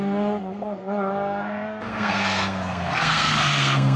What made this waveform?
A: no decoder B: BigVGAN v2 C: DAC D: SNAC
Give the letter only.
D